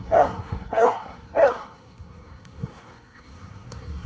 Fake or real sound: fake